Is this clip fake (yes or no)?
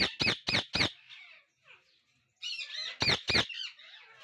no